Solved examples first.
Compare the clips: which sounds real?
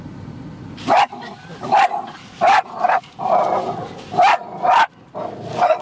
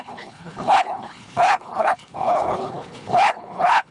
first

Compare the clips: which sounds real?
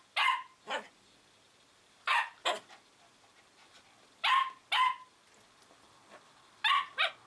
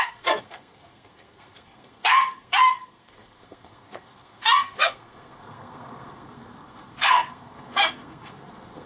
first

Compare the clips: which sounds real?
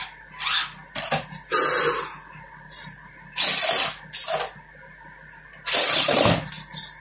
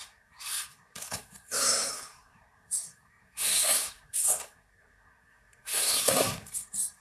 first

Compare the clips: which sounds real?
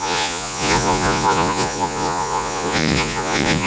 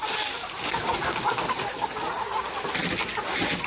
second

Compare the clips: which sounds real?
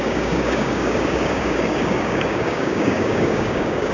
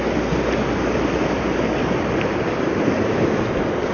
second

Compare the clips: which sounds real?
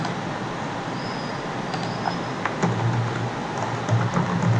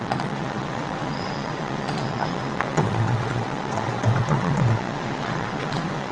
first